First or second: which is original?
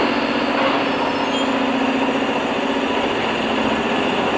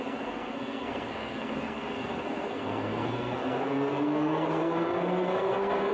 first